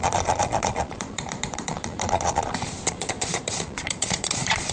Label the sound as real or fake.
fake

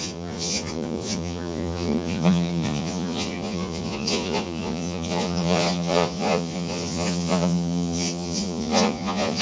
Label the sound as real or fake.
fake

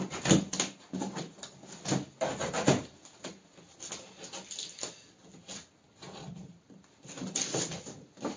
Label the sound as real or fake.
real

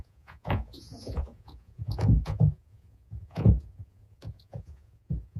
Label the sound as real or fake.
fake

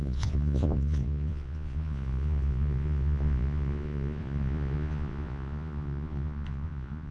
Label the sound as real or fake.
fake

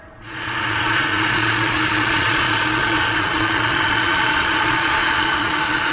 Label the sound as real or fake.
fake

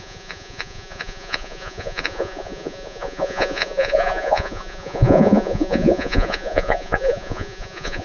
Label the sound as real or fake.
fake